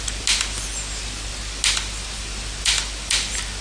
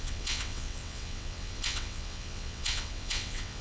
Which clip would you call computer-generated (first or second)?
second